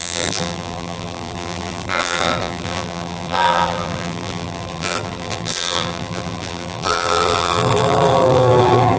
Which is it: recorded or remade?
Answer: remade